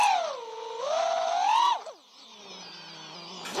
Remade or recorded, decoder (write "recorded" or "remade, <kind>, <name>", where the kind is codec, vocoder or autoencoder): recorded